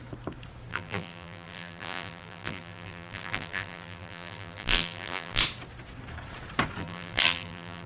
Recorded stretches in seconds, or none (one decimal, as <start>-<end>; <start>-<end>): 0.0-0.7; 5.4-6.8